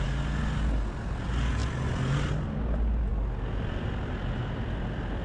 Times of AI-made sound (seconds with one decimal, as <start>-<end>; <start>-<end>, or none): none